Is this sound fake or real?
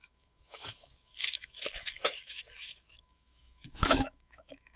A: fake